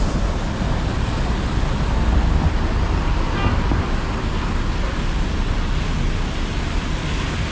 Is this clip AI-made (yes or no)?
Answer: no